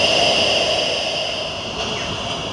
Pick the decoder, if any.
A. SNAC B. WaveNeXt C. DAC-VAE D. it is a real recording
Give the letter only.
D